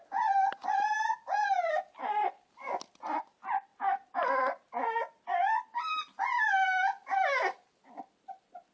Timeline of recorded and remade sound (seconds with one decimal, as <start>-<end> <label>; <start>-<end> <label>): 0.0-8.7 recorded